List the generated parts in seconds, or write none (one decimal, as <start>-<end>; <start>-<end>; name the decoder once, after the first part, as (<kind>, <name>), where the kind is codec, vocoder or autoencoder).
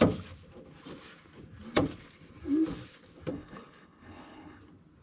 3.3-4.6 (codec, HILCodec)